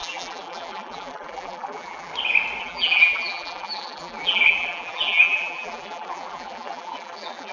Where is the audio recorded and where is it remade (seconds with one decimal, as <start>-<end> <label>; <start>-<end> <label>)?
0.0-2.1 remade; 2.1-2.6 recorded; 2.6-7.5 remade